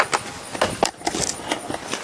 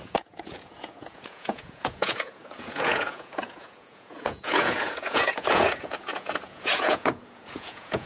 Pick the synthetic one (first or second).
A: second